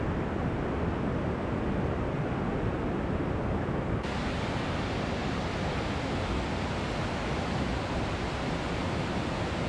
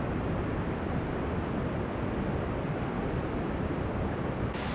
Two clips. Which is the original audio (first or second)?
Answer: first